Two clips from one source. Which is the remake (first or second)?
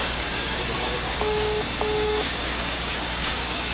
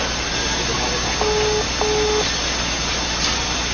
first